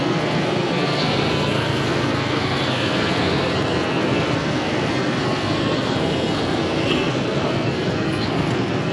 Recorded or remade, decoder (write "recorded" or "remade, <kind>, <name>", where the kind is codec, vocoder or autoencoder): remade, codec, SNAC